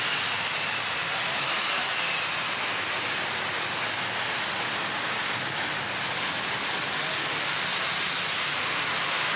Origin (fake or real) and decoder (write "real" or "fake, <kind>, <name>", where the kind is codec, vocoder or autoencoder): real